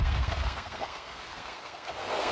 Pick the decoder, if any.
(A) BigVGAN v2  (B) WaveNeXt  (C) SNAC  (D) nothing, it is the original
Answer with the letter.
C